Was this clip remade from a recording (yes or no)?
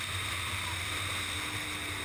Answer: no